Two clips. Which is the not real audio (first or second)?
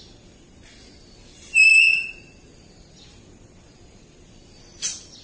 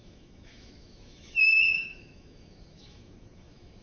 second